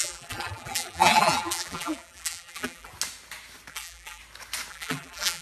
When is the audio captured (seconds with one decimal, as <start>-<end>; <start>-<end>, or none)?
2.9-3.7; 4.2-4.7